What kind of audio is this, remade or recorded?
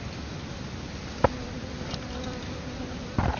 recorded